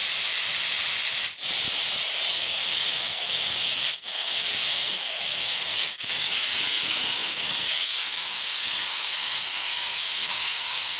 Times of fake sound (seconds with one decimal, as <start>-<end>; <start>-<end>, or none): 2.3-11.0